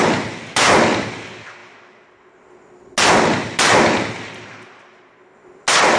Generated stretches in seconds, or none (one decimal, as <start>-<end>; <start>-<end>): none